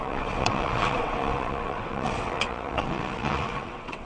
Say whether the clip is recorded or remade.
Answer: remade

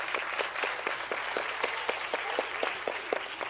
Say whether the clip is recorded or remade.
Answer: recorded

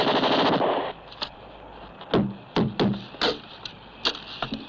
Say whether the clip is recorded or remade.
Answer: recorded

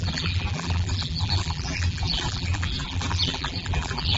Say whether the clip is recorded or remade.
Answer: remade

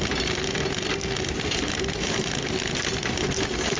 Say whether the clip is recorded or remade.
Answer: recorded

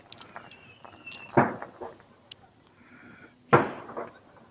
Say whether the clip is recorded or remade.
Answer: recorded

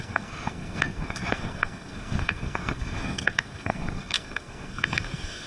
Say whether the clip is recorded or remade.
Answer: remade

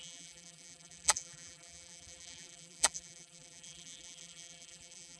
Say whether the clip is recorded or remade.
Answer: remade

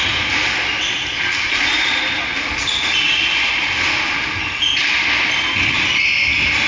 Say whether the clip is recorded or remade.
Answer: recorded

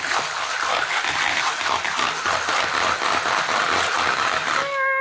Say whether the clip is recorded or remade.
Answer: recorded